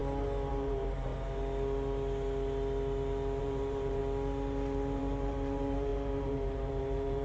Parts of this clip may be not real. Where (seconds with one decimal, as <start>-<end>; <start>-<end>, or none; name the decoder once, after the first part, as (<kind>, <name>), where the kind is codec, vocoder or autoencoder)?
0.5-1.1 (vocoder, BigVGAN v2); 3.4-4.0; 5.0-7.2